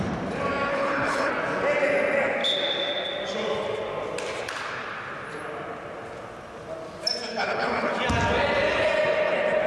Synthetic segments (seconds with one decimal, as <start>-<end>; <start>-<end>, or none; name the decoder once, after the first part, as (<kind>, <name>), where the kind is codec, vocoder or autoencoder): 0.7-1.3 (codec, HILCodec); 7.3-7.9